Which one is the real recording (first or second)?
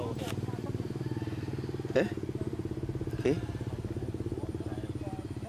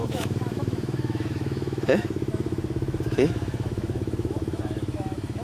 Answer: first